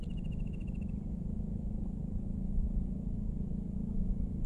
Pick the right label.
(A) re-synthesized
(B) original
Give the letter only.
B